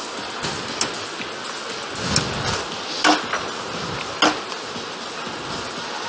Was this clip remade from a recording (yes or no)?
no